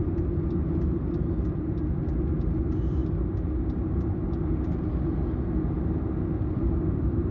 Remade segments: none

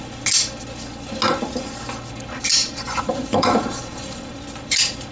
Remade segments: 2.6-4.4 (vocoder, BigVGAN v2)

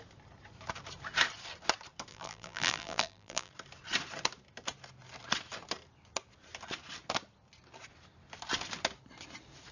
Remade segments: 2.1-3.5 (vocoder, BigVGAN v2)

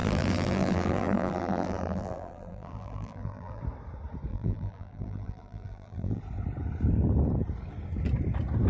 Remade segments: 0.0-3.6 (vocoder, BigVGAN v2); 4.3-6.2

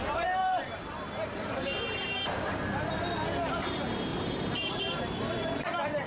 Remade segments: 0.4-2.5 (vocoder, BigVGAN v2); 4.1-5.0

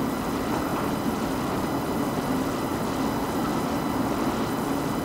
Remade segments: none

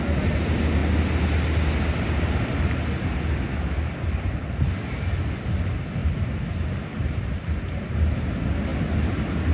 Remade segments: 6.0-7.4 (vocoder, BigVGAN v2)

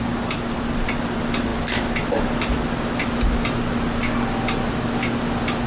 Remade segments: none